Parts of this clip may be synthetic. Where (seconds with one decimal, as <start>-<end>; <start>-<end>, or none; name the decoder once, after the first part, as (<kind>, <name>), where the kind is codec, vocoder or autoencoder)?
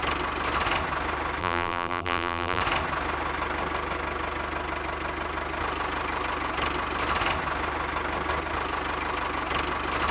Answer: 1.4-2.6 (vocoder, BigVGAN v2)